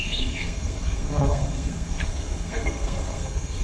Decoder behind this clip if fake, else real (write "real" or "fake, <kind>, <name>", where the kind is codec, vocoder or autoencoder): fake, codec, SNAC